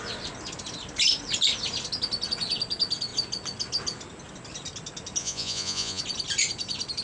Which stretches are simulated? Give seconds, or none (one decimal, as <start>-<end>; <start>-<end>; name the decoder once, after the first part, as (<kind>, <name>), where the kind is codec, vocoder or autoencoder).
5.2-6.0 (vocoder, Vocos)